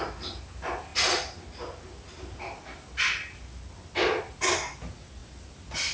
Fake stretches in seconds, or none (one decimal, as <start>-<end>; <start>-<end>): none

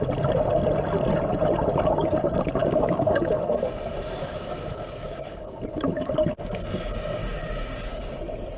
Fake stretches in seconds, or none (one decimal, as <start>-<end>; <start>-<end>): 2.6-3.4; 4.2-5.6; 7.2-8.2

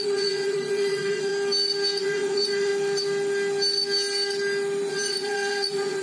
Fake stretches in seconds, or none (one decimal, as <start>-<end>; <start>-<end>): 0.0-1.3; 2.0-2.7; 4.9-6.0

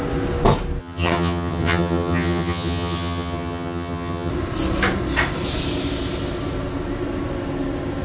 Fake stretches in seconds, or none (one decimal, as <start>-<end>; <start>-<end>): 0.8-4.3

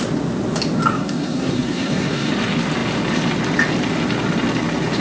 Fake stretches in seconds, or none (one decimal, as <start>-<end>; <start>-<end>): 0.9-2.3

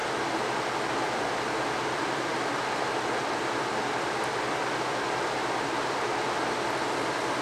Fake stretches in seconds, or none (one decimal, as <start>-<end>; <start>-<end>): none

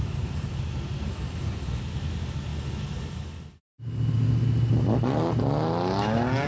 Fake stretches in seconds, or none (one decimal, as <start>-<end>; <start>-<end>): none

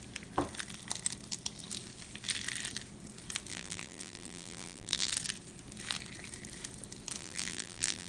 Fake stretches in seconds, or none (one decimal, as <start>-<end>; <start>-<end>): 3.5-5.1; 7.2-8.1